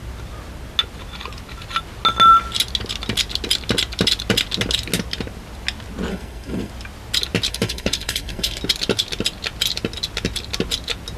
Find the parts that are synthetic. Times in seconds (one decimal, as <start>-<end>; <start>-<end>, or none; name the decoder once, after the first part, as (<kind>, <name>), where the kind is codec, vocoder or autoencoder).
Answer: 6.1-6.7 (codec, SNAC); 7.5-8.6